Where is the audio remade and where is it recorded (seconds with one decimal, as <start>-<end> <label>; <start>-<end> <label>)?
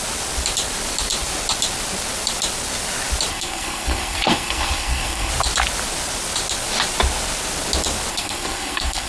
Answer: 0.0-3.3 recorded; 3.3-5.3 remade; 5.3-8.1 recorded; 8.1-9.1 remade